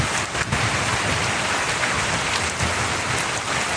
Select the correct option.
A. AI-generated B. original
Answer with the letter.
B